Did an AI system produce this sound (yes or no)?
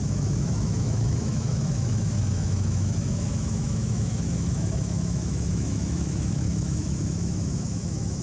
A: yes